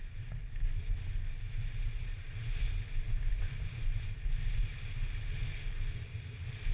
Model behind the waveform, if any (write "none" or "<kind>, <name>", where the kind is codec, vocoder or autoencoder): none